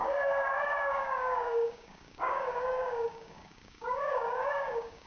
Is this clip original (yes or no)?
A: no